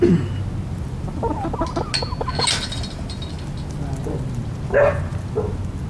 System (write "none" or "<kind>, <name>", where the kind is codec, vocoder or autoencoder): none